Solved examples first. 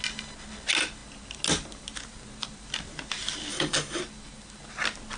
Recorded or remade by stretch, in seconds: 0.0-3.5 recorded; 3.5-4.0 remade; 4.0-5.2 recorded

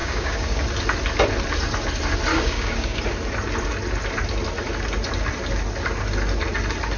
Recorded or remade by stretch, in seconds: 0.0-0.6 remade; 0.6-2.3 recorded; 2.3-3.0 remade; 3.0-7.0 recorded

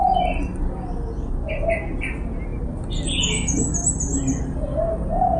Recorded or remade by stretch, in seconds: 0.0-5.4 recorded